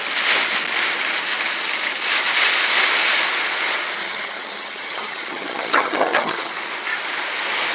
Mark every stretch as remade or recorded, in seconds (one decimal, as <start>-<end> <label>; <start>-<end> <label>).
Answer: 0.0-4.0 recorded; 4.0-6.5 remade; 6.5-7.7 recorded